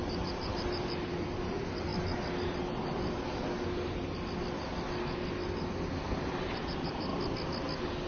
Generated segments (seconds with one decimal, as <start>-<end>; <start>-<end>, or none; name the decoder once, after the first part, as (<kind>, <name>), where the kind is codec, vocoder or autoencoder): 0.0-1.9 (vocoder, BigVGAN v2); 5.9-7.1